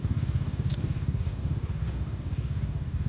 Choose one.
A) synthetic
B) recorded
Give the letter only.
A